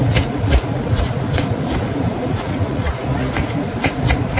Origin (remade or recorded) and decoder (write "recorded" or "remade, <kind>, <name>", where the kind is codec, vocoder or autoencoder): remade, vocoder, Vocos